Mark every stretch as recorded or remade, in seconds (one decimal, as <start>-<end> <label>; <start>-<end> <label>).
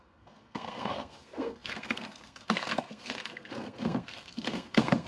0.0-5.1 remade